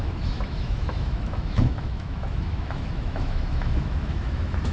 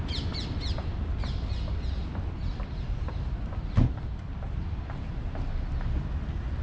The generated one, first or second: first